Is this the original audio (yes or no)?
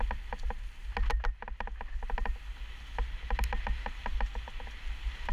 yes